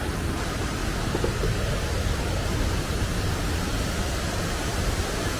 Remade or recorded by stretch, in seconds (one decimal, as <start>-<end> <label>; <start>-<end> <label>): 0.0-0.8 remade; 0.8-4.0 recorded; 4.0-5.4 remade